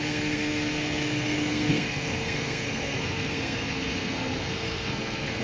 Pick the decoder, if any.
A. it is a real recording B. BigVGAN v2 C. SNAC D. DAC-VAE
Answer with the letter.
C